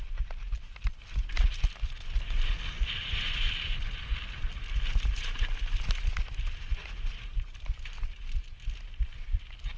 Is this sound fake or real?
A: real